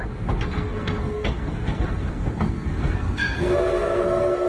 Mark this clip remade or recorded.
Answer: remade